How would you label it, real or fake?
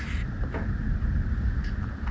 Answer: real